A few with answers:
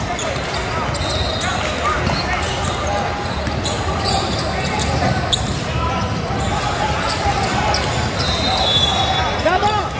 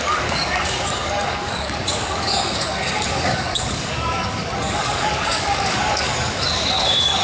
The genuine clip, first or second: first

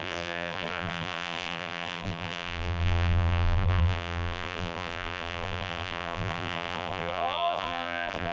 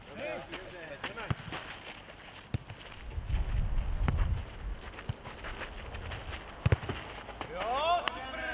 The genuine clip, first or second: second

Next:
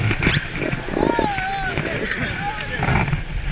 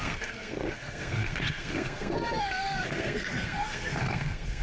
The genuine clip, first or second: first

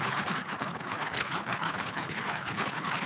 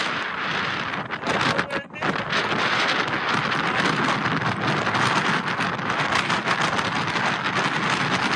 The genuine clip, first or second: second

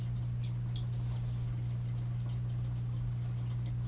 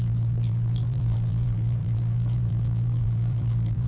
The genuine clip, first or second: first